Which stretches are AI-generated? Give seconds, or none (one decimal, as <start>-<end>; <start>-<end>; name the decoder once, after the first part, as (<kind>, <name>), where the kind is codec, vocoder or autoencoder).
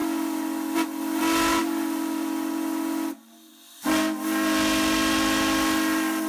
none